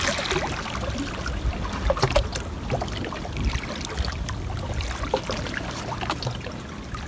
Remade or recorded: recorded